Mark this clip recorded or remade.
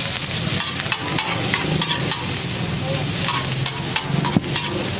recorded